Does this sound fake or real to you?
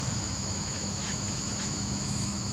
fake